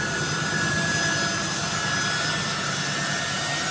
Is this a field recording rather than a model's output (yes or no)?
yes